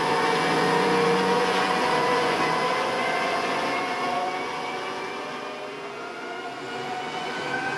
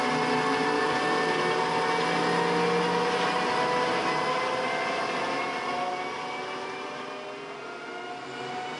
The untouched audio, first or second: second